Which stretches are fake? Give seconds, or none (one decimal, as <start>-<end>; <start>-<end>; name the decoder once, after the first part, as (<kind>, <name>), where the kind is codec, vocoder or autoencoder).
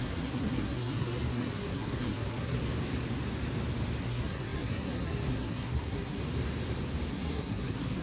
0.0-2.6 (codec, SNAC); 4.0-6.2; 7.1-8.0